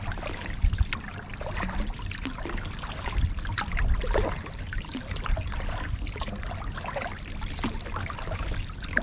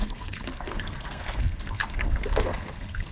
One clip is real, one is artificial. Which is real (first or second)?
first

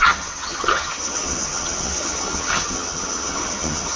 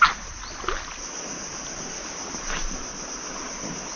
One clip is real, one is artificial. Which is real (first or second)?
second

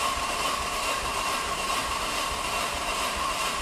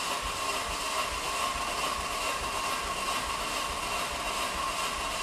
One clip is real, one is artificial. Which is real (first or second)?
second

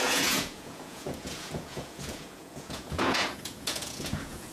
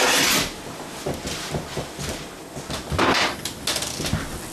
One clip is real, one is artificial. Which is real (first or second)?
second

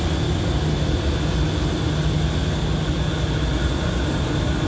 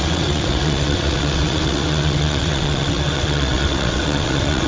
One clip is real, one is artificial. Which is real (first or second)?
first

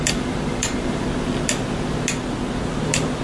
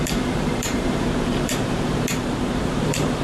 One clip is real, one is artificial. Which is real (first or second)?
first